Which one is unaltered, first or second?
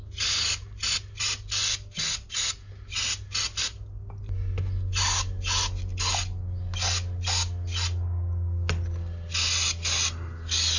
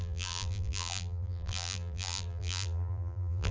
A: first